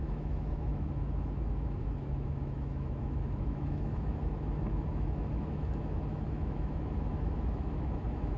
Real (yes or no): no